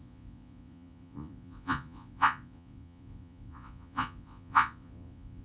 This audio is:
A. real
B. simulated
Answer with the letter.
B